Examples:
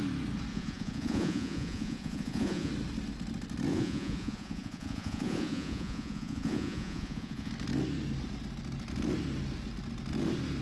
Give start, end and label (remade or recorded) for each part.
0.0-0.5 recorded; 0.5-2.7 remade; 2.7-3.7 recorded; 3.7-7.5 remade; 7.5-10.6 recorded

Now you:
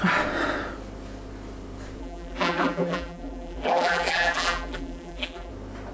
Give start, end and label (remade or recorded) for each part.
0.0-2.0 recorded; 2.0-5.5 remade; 5.5-5.9 recorded

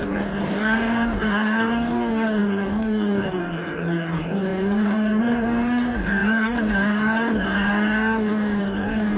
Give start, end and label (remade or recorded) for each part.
0.0-9.2 remade

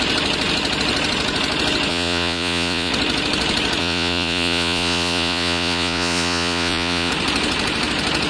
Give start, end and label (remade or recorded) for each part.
0.0-1.9 recorded; 1.9-2.9 remade; 2.9-3.8 recorded; 3.8-7.1 remade; 7.1-8.3 recorded

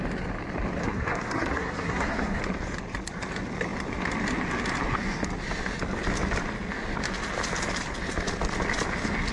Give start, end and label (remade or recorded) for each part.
0.0-0.8 recorded; 0.8-2.4 remade; 2.4-9.3 recorded

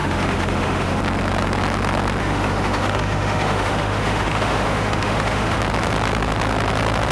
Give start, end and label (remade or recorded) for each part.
0.0-1.0 remade; 1.0-2.2 recorded; 2.2-5.6 remade; 5.6-7.1 recorded

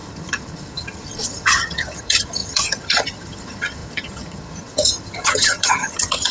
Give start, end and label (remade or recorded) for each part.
0.0-6.3 remade

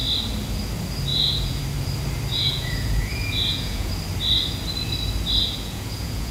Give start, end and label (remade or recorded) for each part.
0.0-1.1 recorded; 1.1-1.6 remade; 1.6-2.3 recorded; 2.3-3.9 remade; 3.9-5.4 recorded; 5.4-6.3 remade